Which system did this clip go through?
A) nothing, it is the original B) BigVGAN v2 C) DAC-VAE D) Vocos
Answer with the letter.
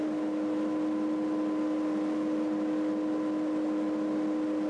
A